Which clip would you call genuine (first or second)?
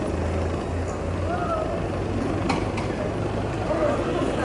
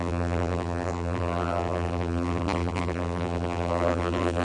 first